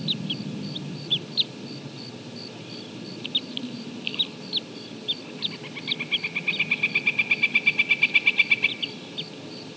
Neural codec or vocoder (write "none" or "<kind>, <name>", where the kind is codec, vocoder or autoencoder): none